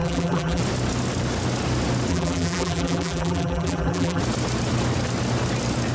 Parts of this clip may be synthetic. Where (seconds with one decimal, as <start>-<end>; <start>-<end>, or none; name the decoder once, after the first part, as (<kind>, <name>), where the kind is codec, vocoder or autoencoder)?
0.0-0.6 (vocoder, BigVGAN v2); 2.1-4.2

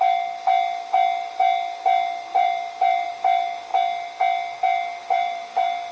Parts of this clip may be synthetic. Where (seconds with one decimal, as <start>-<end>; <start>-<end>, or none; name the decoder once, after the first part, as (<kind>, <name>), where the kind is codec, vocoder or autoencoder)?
2.3-3.1 (vocoder, BigVGAN v2); 5.0-5.9

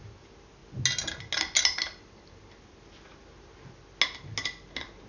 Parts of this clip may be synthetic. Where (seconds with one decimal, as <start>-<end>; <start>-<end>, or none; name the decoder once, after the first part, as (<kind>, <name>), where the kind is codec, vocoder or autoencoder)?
none